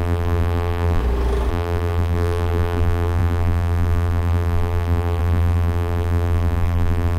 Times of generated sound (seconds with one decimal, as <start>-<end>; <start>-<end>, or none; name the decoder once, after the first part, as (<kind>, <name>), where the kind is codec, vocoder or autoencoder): 0.0-1.0 (vocoder, BigVGAN v2); 1.5-7.2